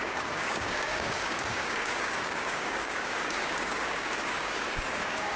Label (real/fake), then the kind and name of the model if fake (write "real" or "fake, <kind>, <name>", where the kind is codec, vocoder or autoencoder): fake, codec, DAC